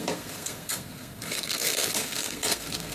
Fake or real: fake